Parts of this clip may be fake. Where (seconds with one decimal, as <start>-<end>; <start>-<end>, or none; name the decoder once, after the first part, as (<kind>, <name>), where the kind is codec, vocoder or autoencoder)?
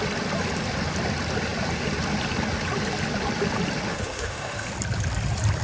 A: 3.9-4.7 (autoencoder, DAC-VAE)